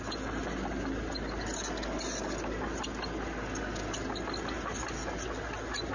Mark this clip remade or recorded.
recorded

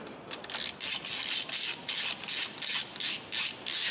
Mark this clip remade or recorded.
recorded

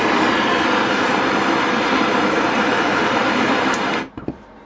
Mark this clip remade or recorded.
remade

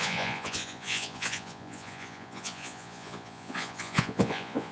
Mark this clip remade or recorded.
remade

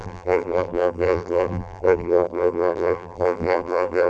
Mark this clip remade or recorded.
remade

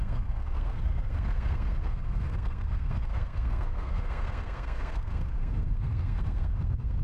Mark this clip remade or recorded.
remade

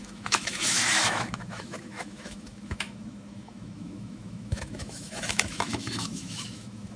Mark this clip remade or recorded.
remade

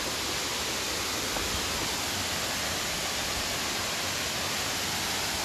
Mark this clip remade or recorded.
remade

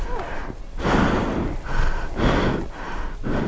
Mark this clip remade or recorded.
recorded